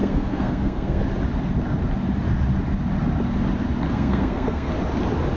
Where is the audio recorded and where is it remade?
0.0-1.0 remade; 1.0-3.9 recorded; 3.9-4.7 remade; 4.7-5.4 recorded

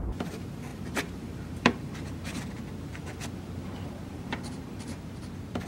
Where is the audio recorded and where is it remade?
0.0-0.7 recorded; 0.7-2.4 remade; 2.4-4.1 recorded; 4.1-5.2 remade; 5.2-5.7 recorded

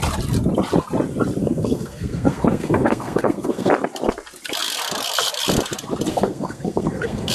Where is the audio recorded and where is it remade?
0.0-1.4 recorded; 1.4-3.7 remade; 3.7-6.1 recorded; 6.1-7.3 remade

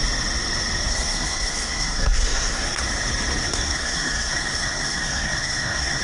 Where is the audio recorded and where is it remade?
0.0-0.9 recorded; 0.9-2.8 remade; 2.8-3.4 recorded; 3.4-6.0 remade